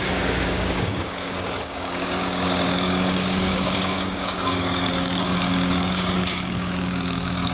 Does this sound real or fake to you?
fake